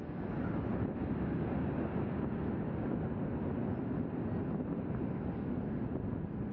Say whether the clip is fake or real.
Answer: real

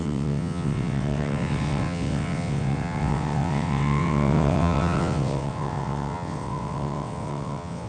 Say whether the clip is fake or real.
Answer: fake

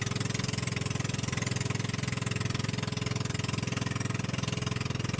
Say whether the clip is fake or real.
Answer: real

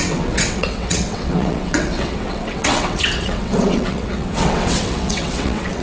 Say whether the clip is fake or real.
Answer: fake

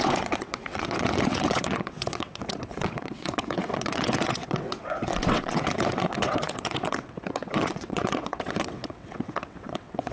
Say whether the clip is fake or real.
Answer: fake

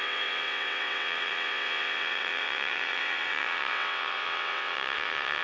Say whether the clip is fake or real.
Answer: fake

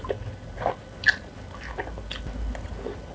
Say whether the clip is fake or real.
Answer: real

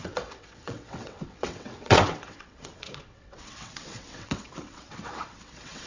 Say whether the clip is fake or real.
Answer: fake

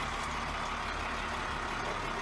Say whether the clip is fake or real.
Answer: real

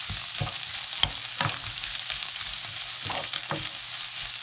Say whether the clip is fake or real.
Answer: real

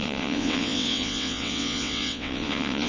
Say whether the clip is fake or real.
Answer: fake